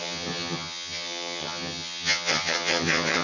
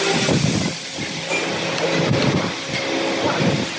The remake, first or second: first